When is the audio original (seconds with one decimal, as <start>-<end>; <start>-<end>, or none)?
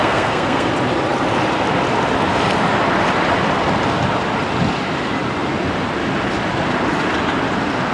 0.7-7.9